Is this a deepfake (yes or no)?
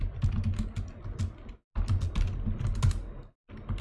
no